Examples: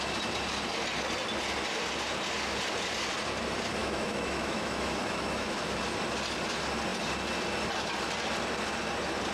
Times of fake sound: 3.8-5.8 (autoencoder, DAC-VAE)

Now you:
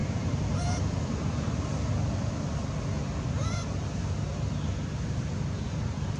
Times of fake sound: 0.0-0.8 (vocoder, BigVGAN v2)

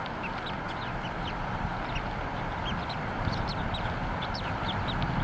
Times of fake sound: none